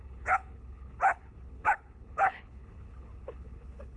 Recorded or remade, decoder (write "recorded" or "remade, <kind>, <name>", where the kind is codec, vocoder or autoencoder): remade, codec, HILCodec